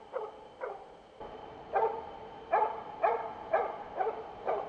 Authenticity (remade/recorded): remade